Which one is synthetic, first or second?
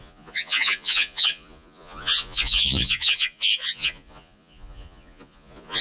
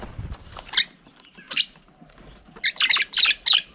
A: first